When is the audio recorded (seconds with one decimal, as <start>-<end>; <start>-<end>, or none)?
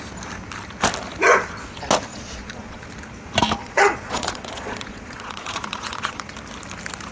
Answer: 0.0-2.1; 2.8-3.6; 6.3-7.1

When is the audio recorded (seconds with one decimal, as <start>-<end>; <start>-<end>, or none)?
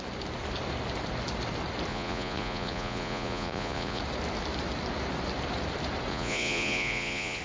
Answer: 0.0-1.9; 4.0-6.1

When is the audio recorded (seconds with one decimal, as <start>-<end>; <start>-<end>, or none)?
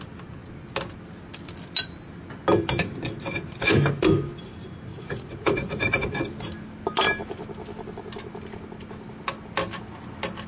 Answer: 0.0-4.9; 6.2-10.5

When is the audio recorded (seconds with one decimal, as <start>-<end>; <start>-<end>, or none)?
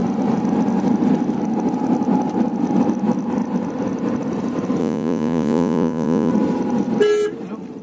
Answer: 0.0-4.8; 6.3-7.8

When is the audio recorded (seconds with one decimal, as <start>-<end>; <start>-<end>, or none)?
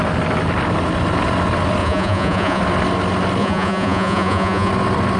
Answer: 0.0-1.8; 2.6-3.4; 4.7-5.2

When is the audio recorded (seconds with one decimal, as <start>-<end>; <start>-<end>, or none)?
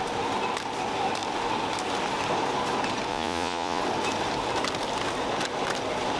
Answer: 0.0-3.1; 3.8-6.2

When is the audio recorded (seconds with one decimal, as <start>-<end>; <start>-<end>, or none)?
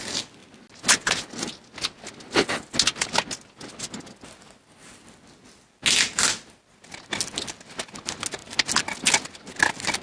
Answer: 0.0-10.0